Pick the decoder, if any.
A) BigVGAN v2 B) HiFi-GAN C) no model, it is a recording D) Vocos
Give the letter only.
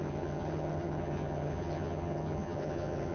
B